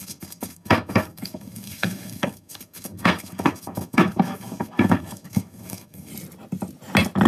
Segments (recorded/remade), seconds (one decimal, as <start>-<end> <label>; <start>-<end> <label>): 0.0-6.1 remade; 6.1-7.3 recorded

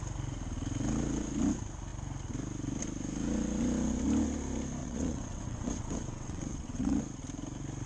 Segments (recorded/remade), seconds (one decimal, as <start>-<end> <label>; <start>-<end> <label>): 0.0-4.8 recorded; 4.8-7.0 remade; 7.0-7.9 recorded

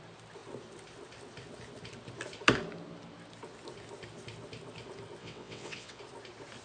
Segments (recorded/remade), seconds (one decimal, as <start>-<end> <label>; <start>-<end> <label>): 0.0-5.2 recorded; 5.2-6.0 remade; 6.0-6.6 recorded

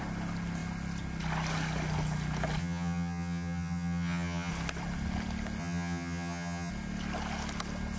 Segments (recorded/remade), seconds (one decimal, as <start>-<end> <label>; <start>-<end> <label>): 0.0-2.6 recorded; 2.6-4.5 remade; 4.5-5.6 recorded; 5.6-6.7 remade; 6.7-8.0 recorded

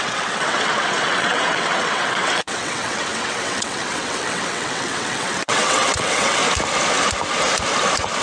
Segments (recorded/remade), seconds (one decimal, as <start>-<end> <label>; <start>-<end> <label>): 0.0-6.4 remade; 6.4-8.2 recorded

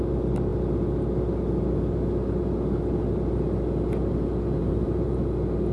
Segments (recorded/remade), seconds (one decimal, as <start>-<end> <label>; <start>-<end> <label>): 0.0-4.5 recorded; 4.5-5.2 remade; 5.2-5.7 recorded